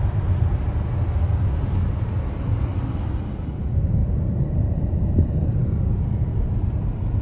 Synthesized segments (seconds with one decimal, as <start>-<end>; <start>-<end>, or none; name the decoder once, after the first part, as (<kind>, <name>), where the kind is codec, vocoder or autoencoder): 2.7-3.2 (vocoder, BigVGAN v2); 4.0-7.2